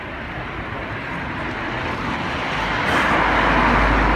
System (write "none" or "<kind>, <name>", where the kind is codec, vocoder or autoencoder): none